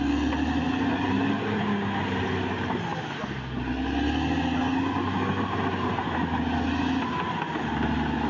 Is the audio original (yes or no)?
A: yes